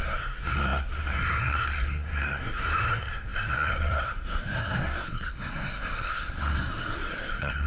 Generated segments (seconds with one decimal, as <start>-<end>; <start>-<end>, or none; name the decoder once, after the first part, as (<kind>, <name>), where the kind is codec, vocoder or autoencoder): 0.0-7.7 (codec, SNAC)